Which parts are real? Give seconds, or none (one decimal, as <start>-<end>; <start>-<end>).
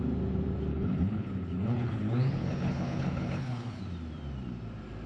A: 0.0-0.7; 3.8-5.1